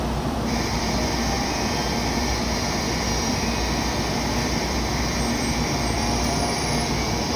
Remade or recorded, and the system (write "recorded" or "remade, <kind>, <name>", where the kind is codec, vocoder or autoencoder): remade, vocoder, BigVGAN v2